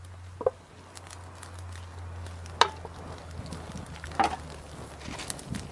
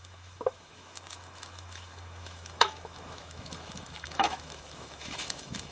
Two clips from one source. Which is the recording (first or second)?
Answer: first